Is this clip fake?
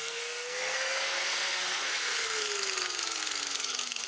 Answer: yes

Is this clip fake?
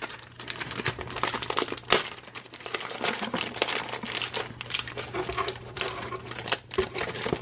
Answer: yes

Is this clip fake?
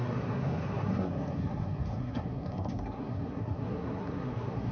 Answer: yes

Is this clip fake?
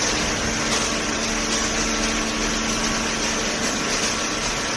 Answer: no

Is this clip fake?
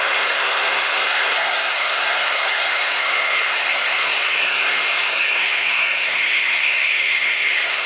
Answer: yes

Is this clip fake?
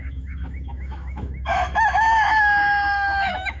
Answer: yes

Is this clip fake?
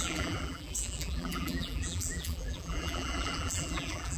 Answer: yes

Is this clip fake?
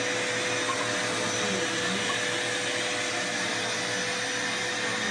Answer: no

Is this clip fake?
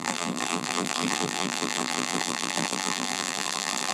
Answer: yes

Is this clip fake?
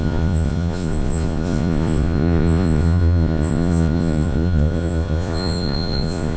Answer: yes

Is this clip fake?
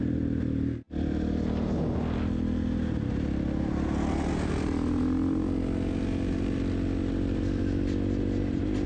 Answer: no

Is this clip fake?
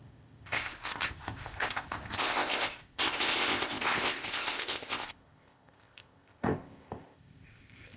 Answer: yes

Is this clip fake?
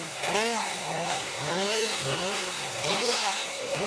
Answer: yes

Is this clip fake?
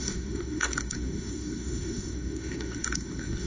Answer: yes